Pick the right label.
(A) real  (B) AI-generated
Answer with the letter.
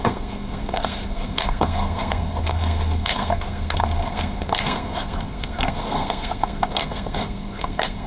B